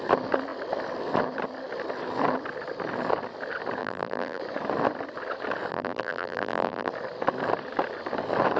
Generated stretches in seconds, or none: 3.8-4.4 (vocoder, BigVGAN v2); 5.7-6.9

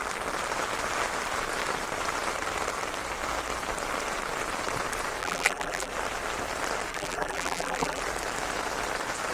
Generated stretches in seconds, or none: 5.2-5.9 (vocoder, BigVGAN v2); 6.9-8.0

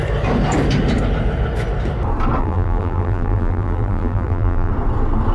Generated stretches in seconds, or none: 2.4-4.7 (vocoder, BigVGAN v2)

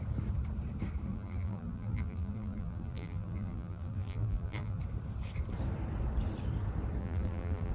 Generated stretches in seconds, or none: 1.1-4.8 (vocoder, BigVGAN v2); 7.0-7.7

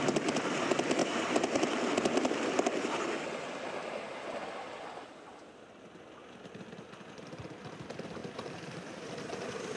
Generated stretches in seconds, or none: 1.0-3.0 (vocoder, BigVGAN v2); 8.2-9.8

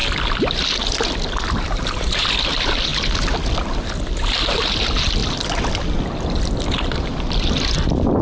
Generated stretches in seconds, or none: 7.1-8.2 (vocoder, BigVGAN v2)